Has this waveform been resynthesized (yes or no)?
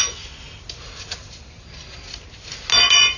no